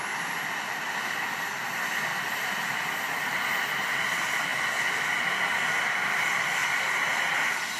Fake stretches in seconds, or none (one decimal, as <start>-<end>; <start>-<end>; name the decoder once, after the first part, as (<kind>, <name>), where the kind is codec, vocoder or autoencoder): none